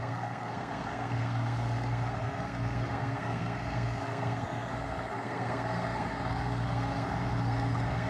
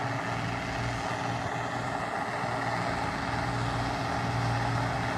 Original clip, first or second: second